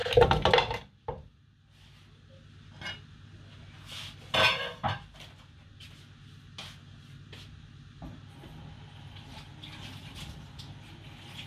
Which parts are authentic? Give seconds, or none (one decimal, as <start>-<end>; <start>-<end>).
0.0-11.5